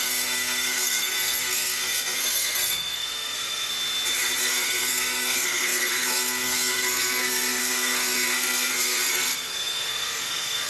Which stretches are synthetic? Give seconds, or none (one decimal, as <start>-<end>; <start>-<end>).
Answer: 0.0-3.7; 4.4-10.7